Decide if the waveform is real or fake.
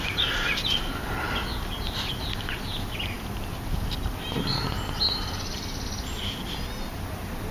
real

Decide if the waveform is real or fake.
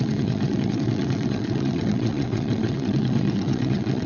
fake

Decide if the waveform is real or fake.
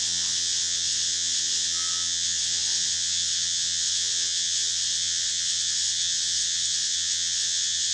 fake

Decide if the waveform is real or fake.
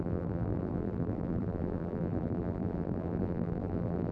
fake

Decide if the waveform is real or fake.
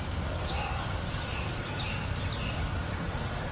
real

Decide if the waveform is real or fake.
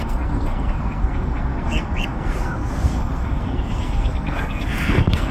fake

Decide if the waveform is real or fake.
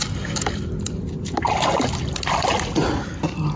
real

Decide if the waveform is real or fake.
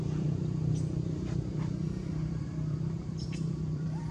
fake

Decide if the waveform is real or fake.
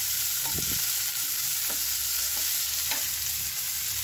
real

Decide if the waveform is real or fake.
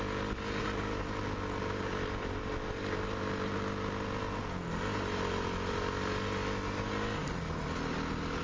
real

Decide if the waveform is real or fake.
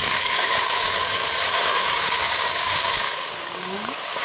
fake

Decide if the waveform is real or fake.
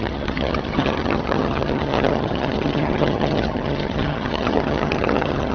fake